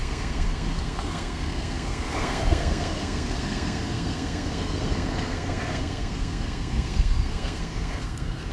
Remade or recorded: remade